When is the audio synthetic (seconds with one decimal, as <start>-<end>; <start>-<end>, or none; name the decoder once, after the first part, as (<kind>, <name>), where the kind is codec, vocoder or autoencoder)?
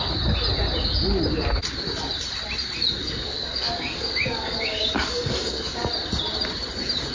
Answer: 3.0-5.9 (codec, DAC)